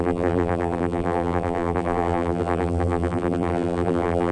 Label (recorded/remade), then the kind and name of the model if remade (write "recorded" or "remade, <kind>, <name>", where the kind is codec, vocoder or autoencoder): remade, vocoder, BigVGAN v2